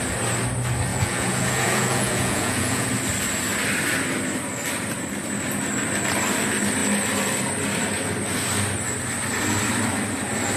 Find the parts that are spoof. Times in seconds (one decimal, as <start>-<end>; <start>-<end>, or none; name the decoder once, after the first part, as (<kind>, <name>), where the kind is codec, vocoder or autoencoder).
0.9-2.9 (vocoder, Vocos)